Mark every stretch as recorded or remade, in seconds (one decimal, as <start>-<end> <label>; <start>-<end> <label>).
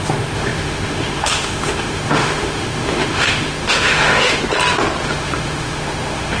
0.0-4.4 remade; 4.4-5.0 recorded; 5.0-6.4 remade